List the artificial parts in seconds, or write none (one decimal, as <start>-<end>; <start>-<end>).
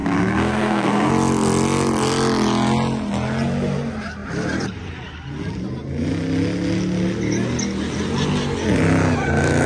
0.0-1.1